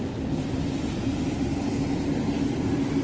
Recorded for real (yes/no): no